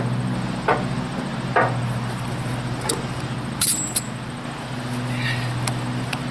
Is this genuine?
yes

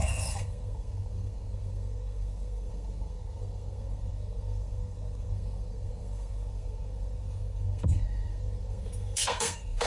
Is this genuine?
no